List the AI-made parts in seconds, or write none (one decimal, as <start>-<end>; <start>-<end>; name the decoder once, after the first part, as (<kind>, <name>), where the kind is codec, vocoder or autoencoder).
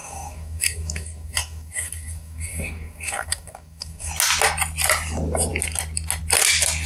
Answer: 0.0-4.1 (codec, DAC)